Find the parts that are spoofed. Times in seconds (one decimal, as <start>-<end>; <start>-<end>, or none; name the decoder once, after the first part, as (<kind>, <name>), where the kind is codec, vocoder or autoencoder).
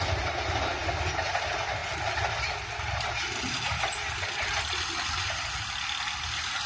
none